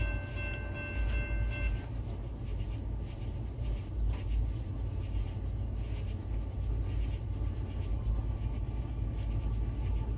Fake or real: real